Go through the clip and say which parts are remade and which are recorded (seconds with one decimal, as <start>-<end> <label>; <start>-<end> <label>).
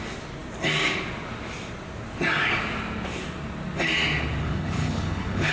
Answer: 0.0-4.4 recorded; 4.4-5.5 remade